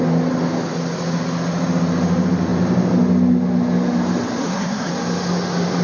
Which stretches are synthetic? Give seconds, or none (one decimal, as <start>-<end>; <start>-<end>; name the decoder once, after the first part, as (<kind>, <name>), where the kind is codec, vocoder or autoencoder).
4.4-4.9 (codec, SNAC)